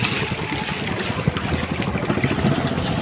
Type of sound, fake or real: real